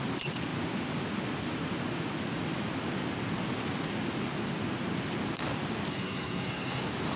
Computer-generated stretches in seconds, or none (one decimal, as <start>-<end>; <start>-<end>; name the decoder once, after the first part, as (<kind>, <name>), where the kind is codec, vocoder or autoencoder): 5.9-6.8 (codec, SNAC)